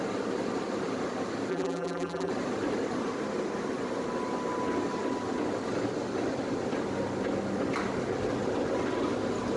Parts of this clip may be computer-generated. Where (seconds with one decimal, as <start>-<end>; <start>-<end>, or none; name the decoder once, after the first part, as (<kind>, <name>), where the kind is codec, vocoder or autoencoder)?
1.5-2.3 (vocoder, BigVGAN v2)